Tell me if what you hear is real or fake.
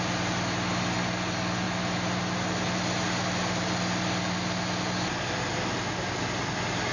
real